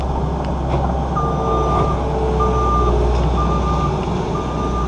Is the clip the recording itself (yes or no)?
yes